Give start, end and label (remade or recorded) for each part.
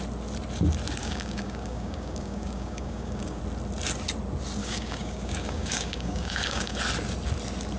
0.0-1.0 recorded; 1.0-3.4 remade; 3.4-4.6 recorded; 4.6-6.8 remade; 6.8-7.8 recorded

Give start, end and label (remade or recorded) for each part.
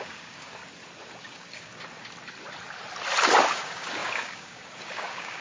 0.0-0.6 remade; 0.6-1.2 recorded; 1.2-1.7 remade; 1.7-3.5 recorded; 3.5-5.4 remade